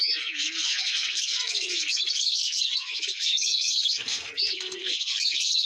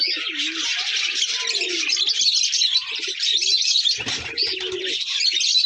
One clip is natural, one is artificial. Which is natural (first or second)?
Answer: second